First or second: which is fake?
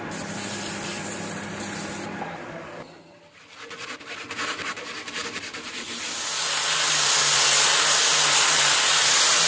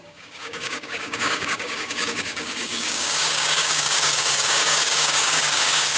second